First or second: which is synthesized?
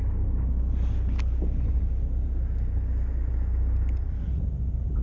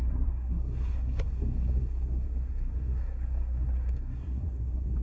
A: second